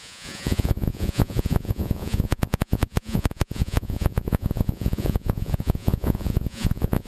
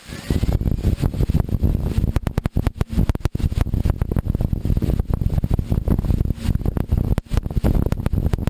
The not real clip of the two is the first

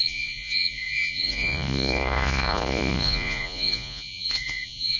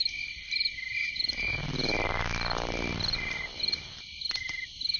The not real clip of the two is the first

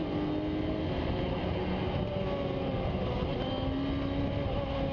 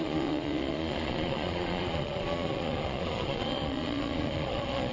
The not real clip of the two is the second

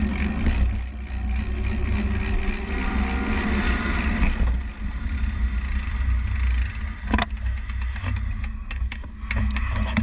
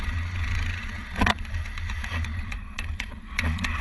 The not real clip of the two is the second